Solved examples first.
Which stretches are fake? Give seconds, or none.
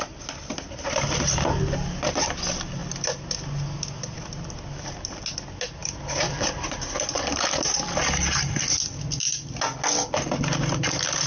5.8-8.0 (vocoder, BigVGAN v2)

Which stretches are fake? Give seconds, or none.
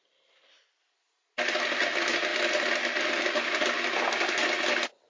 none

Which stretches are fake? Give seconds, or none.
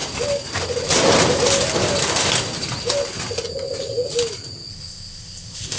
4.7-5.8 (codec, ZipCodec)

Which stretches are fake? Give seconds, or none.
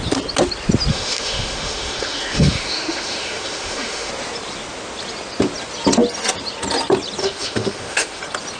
0.9-4.1 (autoencoder, DAC-VAE); 7.2-8.2